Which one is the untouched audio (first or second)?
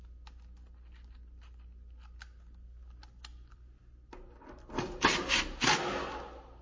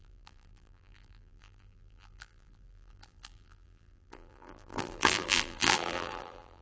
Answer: first